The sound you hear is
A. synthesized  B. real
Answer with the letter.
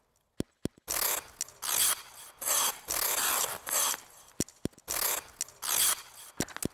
B